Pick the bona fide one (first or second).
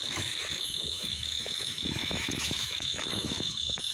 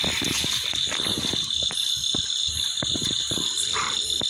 second